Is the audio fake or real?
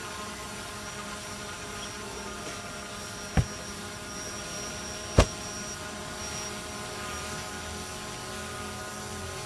real